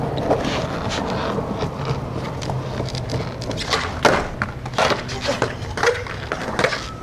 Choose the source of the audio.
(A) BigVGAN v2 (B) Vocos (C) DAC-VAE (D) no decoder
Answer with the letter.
D